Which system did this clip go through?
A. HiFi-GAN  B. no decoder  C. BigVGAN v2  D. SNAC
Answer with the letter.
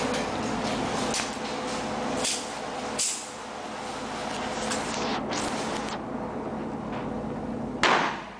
B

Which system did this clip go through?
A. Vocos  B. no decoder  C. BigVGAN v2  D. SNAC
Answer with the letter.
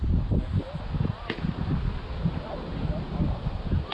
B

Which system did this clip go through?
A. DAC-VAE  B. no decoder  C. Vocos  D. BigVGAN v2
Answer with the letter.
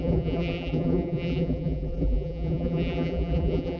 D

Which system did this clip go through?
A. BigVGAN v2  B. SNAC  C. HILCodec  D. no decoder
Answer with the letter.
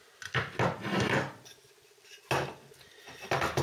D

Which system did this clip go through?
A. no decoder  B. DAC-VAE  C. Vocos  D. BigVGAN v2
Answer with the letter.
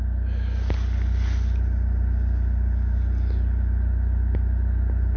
A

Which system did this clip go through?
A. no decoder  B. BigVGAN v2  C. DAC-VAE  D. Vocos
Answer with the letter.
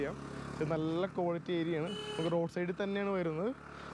A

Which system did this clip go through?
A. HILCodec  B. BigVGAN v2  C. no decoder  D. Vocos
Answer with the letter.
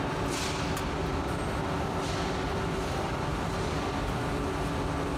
C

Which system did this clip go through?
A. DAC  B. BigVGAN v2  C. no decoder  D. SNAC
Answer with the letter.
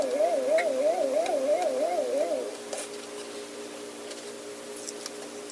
C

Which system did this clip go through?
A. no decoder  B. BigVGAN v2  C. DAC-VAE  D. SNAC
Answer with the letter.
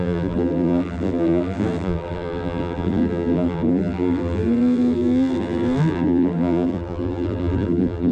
B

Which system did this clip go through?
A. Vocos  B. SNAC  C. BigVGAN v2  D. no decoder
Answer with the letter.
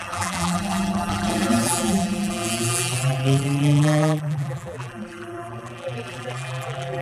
C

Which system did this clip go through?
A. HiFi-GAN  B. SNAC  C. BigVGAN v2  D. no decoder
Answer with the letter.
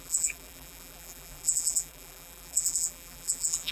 C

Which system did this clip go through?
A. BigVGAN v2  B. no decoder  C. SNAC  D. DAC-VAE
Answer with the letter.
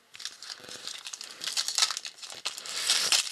B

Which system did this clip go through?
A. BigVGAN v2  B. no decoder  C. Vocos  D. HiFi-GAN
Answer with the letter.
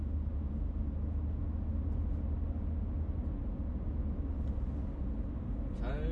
B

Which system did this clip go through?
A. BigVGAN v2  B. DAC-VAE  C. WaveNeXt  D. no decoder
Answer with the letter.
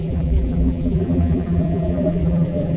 A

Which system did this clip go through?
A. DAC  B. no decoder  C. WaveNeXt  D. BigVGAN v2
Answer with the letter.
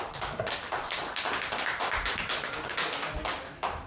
B